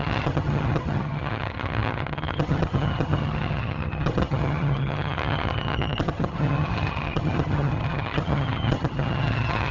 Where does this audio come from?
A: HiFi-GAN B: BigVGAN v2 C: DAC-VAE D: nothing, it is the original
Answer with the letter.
A